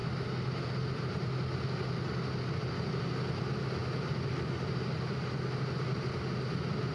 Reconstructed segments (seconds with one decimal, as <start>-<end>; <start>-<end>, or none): none